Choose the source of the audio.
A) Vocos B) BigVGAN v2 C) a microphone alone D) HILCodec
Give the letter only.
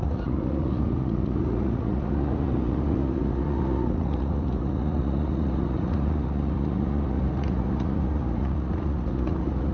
A